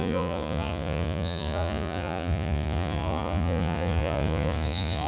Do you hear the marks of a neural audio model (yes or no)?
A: yes